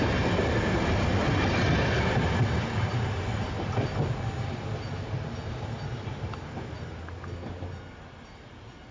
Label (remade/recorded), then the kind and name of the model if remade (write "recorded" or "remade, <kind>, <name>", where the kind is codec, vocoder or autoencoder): recorded